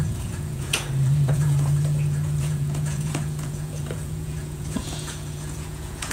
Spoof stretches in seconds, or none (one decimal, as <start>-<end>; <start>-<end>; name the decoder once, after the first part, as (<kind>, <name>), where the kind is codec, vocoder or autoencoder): 0.0-6.1 (vocoder, Vocos)